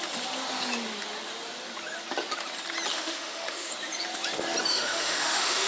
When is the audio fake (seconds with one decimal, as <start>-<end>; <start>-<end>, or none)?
2.9-3.7; 4.7-5.7